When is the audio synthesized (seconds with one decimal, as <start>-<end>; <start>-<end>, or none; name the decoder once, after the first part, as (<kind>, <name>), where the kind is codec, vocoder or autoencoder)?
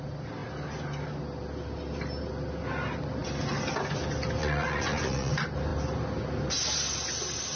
4.4-5.3 (vocoder, Vocos)